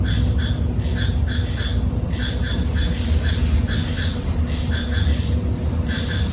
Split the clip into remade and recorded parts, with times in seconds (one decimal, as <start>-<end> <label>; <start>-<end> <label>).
0.0-6.3 recorded

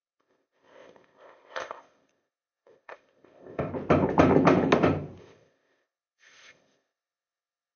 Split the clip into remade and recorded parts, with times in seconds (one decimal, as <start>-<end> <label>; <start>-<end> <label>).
0.0-3.7 remade; 3.7-5.2 recorded; 5.2-7.8 remade

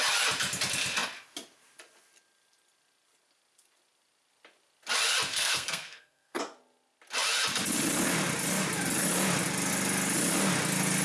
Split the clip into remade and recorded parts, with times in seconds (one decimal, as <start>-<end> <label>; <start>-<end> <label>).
0.0-5.3 recorded; 5.3-6.4 remade; 6.4-11.0 recorded

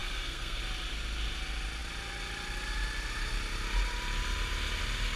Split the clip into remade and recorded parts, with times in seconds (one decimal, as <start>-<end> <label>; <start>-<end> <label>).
0.0-0.6 remade; 0.6-5.2 recorded

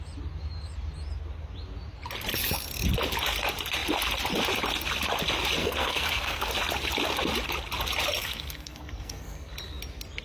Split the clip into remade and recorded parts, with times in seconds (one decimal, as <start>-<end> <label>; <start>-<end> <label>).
0.0-5.6 recorded; 5.6-6.5 remade; 6.5-8.2 recorded; 8.2-9.5 remade; 9.5-10.2 recorded

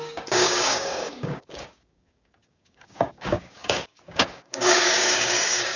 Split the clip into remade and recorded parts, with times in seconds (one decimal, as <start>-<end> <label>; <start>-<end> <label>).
0.0-5.8 remade

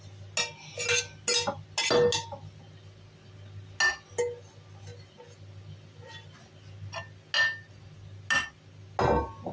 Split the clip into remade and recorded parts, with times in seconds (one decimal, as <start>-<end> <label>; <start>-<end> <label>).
0.0-9.5 recorded

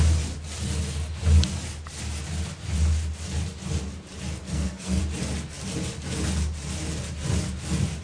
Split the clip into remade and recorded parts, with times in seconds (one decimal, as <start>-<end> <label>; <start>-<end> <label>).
0.0-4.4 recorded; 4.4-5.0 remade; 5.0-8.0 recorded